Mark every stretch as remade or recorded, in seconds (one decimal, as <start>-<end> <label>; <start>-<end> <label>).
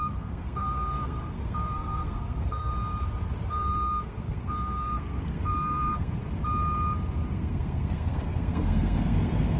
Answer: 0.0-2.7 remade; 2.7-3.5 recorded; 3.5-6.2 remade; 6.2-7.3 recorded; 7.3-9.6 remade